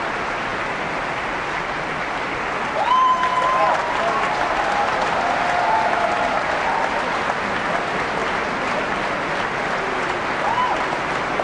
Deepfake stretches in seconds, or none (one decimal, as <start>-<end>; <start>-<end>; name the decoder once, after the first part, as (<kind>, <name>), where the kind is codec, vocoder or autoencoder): none